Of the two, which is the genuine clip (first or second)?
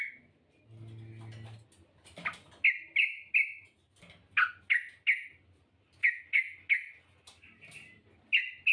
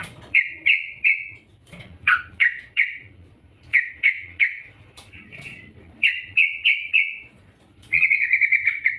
first